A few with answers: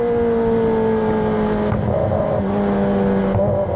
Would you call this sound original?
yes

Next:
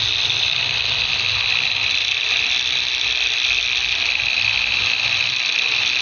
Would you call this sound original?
yes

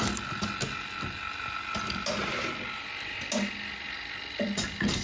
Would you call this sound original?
yes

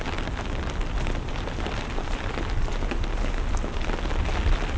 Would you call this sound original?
yes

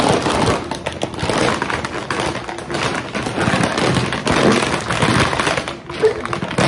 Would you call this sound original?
yes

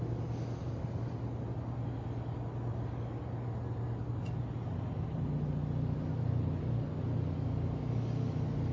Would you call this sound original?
yes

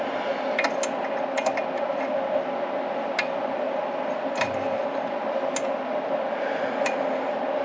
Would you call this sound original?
yes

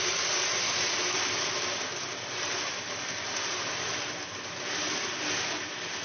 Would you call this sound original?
yes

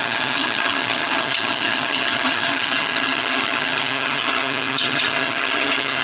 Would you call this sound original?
no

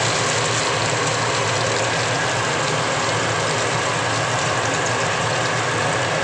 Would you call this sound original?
yes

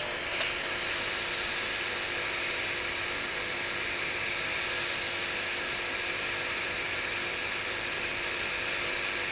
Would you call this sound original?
yes